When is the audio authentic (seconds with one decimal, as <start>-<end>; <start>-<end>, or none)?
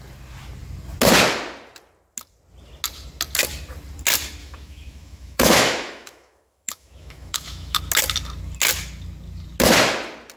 0.0-4.4; 7.8-10.4